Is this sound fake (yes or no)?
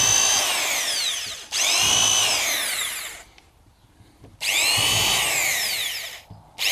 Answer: yes